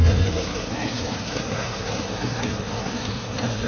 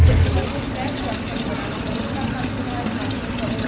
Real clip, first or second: second